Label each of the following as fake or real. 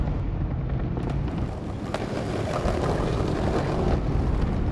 real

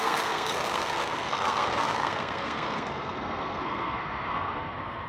fake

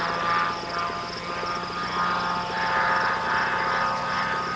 real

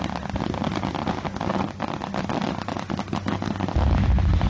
real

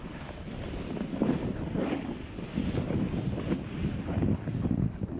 real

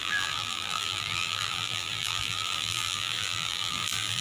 fake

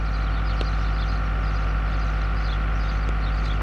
real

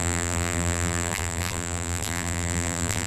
fake